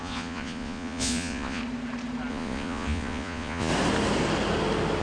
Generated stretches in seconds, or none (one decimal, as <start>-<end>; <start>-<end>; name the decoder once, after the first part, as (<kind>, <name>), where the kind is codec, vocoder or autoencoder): 0.0-1.6 (vocoder, Vocos); 2.3-3.7